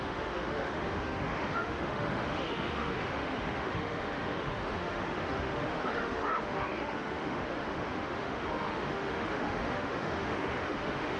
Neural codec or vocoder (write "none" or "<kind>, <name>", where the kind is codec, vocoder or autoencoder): autoencoder, DAC-VAE